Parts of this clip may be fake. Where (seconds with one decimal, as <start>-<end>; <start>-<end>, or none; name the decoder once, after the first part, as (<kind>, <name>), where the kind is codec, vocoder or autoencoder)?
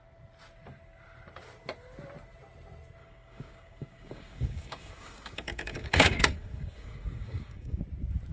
3.0-7.8 (codec, DAC)